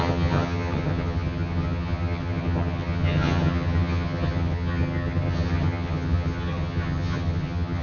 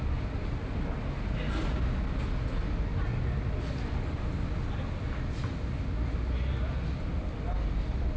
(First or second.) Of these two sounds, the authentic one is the second